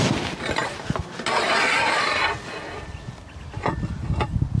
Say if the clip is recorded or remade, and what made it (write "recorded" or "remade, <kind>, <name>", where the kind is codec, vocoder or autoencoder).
recorded